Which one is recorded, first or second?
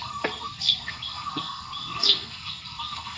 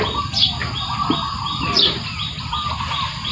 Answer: second